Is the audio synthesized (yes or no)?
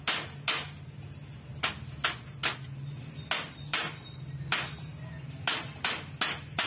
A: no